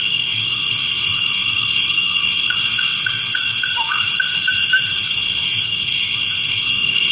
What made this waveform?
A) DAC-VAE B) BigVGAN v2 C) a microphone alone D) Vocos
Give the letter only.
A